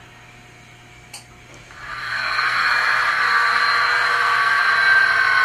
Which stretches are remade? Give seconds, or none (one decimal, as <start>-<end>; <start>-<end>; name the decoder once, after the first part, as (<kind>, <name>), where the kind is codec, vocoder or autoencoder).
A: 1.9-2.7 (codec, SNAC); 3.1-3.6; 4.1-4.7